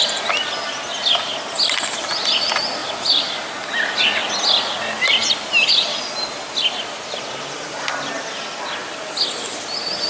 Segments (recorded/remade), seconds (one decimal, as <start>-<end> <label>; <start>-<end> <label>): 0.0-2.8 recorded; 2.8-3.5 remade; 3.5-8.8 recorded; 8.8-10.1 remade